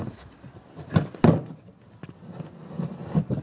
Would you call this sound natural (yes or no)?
yes